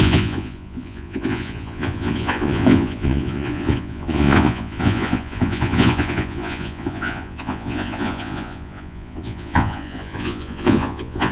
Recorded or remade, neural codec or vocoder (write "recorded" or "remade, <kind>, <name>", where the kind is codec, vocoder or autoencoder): remade, vocoder, Vocos